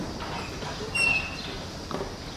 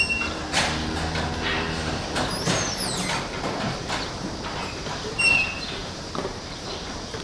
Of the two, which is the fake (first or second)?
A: second